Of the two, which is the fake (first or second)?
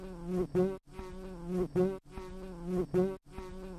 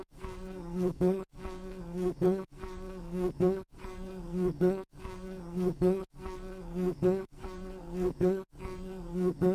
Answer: second